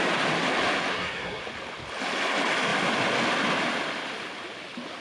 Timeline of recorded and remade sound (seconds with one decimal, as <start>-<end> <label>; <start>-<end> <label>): 0.0-0.9 recorded; 0.9-1.4 remade; 1.4-5.0 recorded